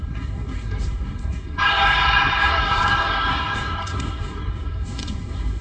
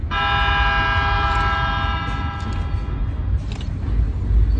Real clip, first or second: second